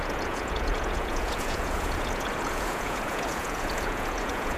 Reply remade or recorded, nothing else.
remade